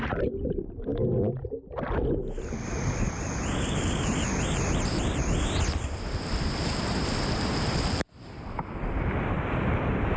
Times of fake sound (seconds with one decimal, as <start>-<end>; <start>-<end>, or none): 0.0-0.9; 6.1-10.2